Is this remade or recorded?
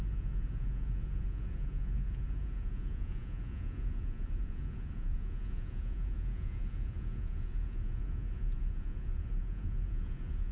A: remade